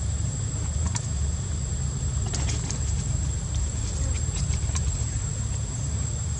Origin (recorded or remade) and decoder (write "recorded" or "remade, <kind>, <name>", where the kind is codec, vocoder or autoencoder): remade, vocoder, BigVGAN v2